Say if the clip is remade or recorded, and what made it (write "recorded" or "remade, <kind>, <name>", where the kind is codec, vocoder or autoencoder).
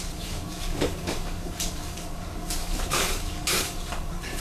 remade, codec, DAC